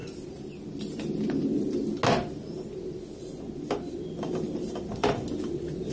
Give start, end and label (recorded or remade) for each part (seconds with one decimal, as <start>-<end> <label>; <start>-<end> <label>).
0.0-5.9 recorded